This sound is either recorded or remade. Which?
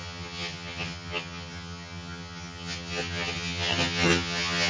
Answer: remade